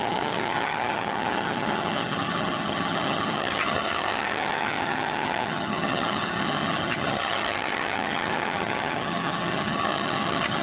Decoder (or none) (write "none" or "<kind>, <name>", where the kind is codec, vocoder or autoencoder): vocoder, HiFi-GAN